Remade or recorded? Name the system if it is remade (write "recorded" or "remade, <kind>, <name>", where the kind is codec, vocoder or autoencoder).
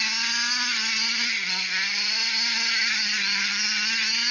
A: recorded